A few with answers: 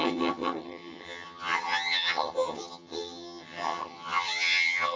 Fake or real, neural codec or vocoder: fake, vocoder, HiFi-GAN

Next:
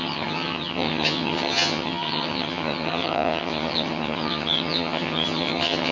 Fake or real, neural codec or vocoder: fake, vocoder, HiFi-GAN